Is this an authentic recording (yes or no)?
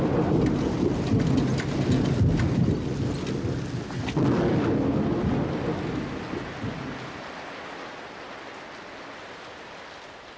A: yes